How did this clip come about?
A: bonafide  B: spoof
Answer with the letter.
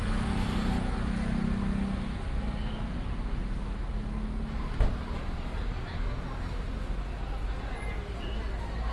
A